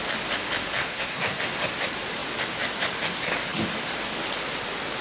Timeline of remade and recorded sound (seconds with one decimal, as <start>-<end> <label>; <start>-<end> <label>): 0.0-0.8 recorded; 0.8-1.4 remade; 1.4-5.0 recorded